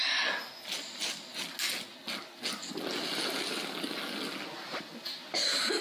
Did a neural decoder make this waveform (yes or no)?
no